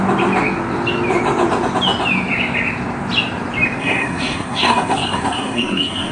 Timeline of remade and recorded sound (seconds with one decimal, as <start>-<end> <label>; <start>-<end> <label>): 0.0-3.8 recorded; 3.8-6.1 remade